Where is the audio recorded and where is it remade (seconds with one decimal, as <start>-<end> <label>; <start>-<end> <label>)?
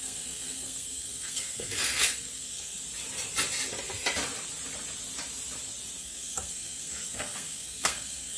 0.0-2.8 remade; 2.8-6.0 recorded; 6.0-8.4 remade